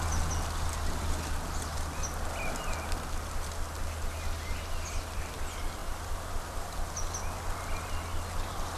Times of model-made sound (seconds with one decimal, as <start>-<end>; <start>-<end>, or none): none